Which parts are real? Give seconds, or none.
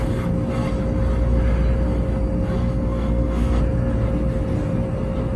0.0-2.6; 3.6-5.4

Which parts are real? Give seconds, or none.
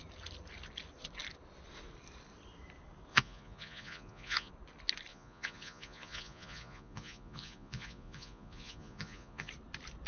0.0-3.1; 4.5-5.1; 9.5-10.1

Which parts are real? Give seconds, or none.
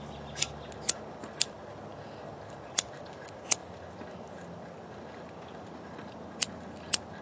0.0-7.2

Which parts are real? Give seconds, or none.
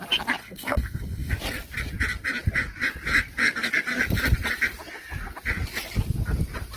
0.0-0.4; 1.3-6.8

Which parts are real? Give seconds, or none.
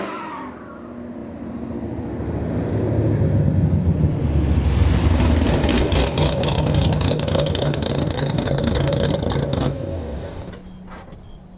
0.0-5.7; 9.1-9.5; 10.5-11.6